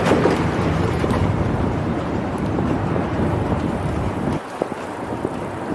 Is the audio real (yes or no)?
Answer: no